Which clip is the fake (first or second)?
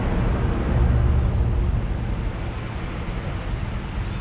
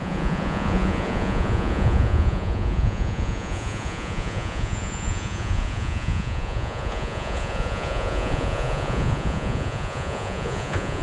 second